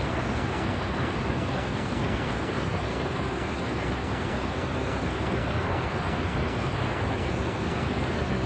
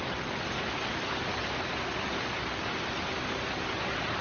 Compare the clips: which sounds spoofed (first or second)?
first